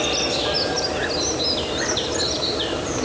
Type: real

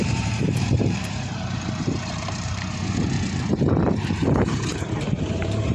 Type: fake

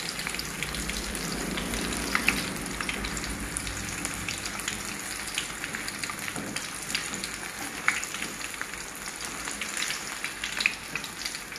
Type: fake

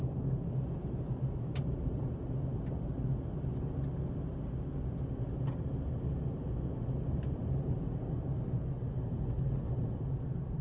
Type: real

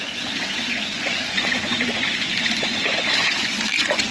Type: fake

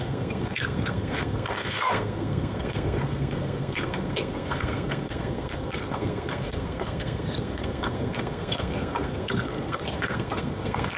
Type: fake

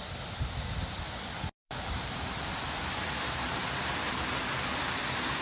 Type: fake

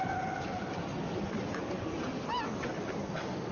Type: real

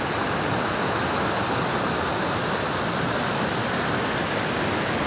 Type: real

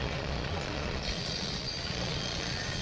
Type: fake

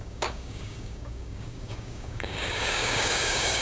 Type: fake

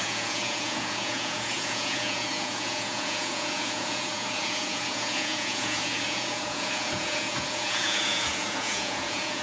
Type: fake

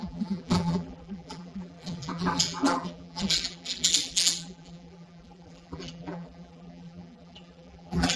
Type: fake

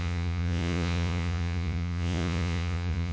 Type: fake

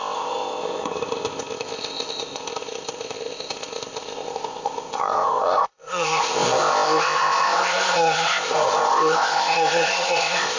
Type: fake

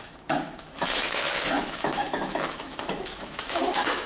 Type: fake